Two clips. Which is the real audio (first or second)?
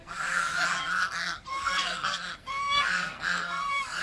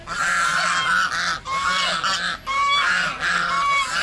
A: second